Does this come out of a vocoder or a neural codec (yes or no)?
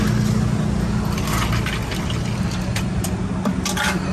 no